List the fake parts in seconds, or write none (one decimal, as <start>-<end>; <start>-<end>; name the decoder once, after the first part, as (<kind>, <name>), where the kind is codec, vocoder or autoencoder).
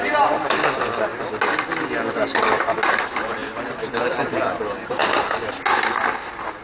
0.0-1.1 (vocoder, BigVGAN v2); 2.9-3.4; 4.1-5.0